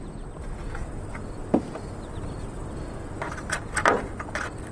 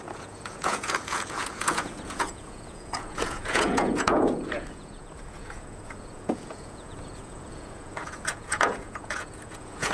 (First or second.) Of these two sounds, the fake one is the second